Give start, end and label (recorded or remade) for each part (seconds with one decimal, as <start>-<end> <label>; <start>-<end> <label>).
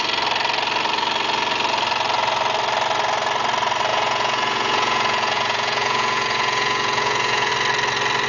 0.0-3.9 recorded; 3.9-7.5 remade; 7.5-8.3 recorded